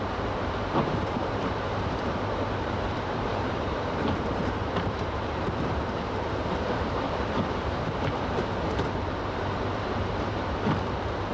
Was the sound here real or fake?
fake